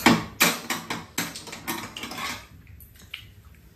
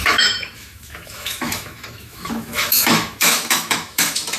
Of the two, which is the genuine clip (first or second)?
first